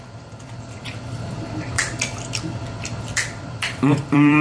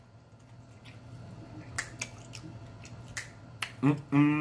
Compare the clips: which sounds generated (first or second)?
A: first